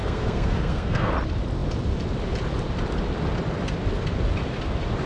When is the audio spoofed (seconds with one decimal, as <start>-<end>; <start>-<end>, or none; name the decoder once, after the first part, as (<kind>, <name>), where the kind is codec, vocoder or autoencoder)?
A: 0.0-1.1 (codec, SNAC)